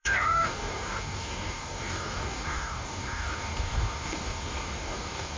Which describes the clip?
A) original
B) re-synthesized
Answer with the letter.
B